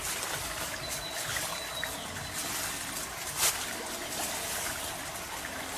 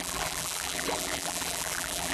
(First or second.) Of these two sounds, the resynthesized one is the second